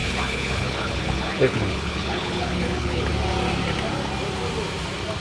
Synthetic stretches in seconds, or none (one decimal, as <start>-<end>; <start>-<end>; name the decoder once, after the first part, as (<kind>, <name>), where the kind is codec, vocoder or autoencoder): 0.0-3.1 (codec, HILCodec)